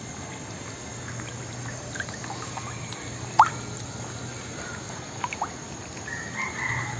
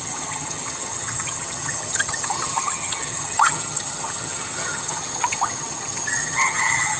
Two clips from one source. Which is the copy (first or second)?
second